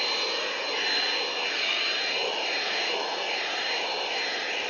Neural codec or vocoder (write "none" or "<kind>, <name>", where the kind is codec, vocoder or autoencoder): none